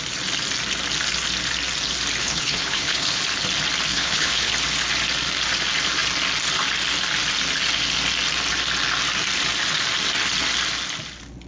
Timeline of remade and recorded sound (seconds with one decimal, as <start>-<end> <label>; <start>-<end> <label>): 0.0-2.2 recorded; 2.2-3.2 remade; 3.2-3.9 recorded; 3.9-4.5 remade; 4.5-11.5 recorded